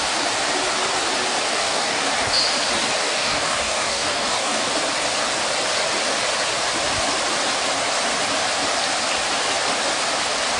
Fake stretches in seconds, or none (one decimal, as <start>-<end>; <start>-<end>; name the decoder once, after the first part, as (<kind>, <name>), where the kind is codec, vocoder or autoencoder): 1.5-2.1 (codec, DAC); 3.0-4.7